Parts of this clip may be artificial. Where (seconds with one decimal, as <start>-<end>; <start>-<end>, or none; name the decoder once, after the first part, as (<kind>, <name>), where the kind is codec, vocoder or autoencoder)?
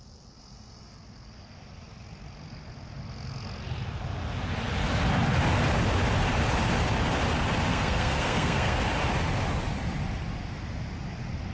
7.7-8.8 (codec, SNAC)